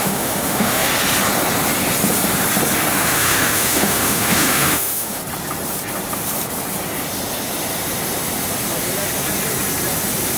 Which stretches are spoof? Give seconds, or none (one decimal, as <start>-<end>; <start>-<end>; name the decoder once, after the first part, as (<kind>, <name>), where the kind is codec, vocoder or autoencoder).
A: 0.0-0.9 (autoencoder, DAC-VAE); 2.9-5.2